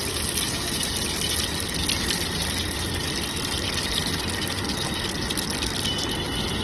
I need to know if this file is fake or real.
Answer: real